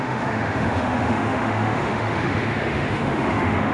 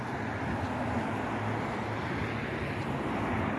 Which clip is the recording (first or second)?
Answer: second